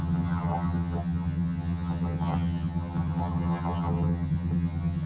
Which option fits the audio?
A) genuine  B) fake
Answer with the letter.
B